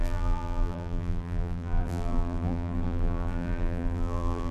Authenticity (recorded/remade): remade